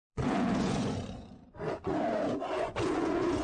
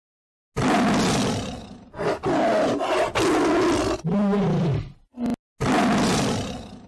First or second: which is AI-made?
first